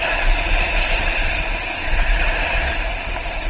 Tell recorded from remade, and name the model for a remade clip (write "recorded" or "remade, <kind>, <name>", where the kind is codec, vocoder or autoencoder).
remade, vocoder, BigVGAN v2